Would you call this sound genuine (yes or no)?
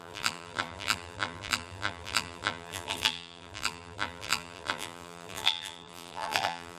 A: no